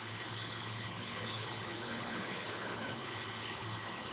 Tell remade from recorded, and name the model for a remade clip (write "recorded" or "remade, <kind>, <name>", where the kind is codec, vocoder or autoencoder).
remade, codec, HILCodec